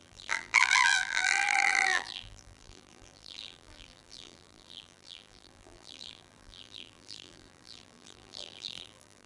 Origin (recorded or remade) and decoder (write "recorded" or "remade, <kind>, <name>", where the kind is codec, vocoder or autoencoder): remade, vocoder, BigVGAN v2